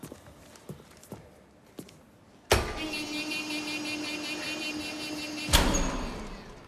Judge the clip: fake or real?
real